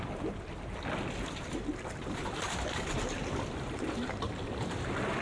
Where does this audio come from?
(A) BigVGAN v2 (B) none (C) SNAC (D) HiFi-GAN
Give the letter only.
A